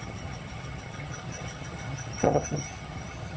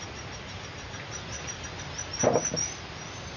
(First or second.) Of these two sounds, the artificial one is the first